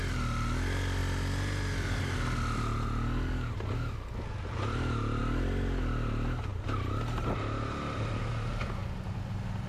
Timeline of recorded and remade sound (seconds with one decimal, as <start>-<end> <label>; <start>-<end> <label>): 0.0-9.7 recorded